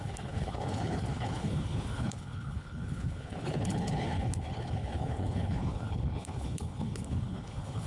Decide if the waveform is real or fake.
fake